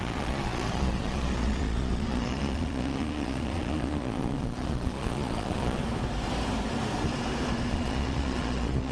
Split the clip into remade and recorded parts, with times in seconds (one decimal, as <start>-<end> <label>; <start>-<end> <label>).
0.0-5.8 remade; 5.8-7.7 recorded; 7.7-8.9 remade